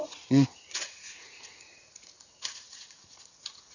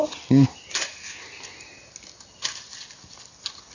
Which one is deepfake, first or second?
first